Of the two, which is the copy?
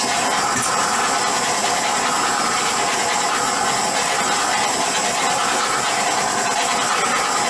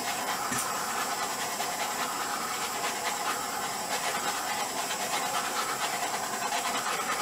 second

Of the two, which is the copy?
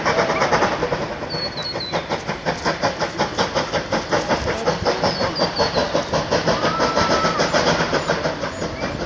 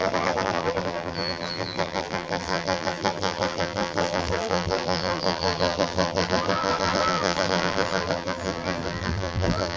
second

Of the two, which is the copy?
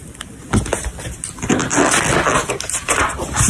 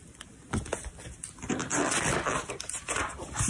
second